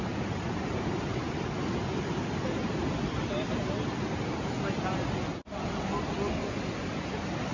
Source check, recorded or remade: recorded